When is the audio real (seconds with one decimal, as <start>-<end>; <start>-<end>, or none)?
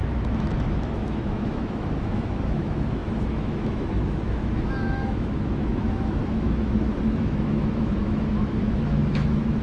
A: none